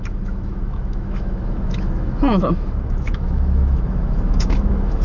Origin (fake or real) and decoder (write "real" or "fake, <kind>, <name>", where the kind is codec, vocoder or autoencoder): fake, autoencoder, DAC-VAE